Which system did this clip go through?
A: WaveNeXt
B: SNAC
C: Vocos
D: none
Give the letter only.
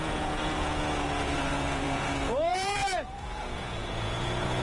C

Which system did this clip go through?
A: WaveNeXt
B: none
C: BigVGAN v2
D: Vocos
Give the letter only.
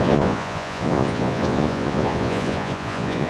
D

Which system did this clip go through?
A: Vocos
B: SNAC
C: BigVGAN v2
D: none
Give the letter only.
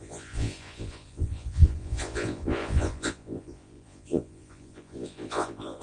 A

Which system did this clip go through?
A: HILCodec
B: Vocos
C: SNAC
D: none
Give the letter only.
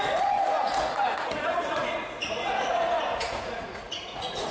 B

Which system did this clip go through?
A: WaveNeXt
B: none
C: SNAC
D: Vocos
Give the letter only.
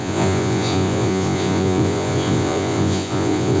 D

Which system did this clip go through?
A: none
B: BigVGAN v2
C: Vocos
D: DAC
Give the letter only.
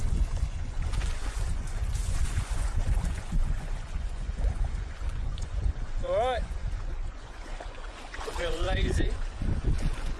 C